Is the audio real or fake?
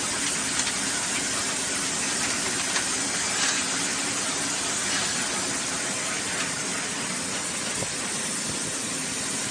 real